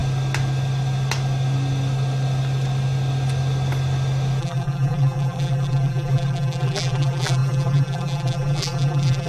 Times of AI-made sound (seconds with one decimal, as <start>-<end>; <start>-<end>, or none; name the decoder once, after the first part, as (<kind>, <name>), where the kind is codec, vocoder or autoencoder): 4.4-9.3 (vocoder, BigVGAN v2)